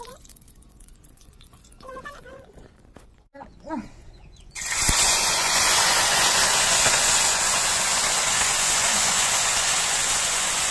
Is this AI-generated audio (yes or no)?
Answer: yes